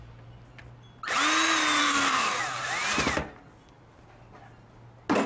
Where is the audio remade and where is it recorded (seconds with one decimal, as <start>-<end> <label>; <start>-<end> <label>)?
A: 0.0-1.8 recorded; 1.8-2.4 remade; 2.4-5.3 recorded